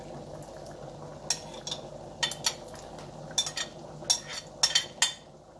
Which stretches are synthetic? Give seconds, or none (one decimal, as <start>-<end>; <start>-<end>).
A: none